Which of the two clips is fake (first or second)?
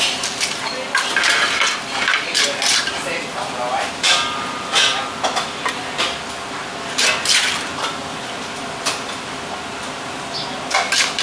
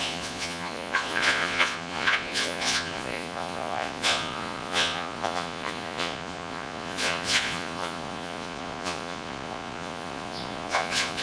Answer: second